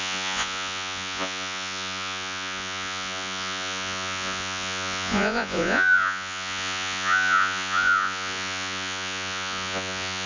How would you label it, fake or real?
fake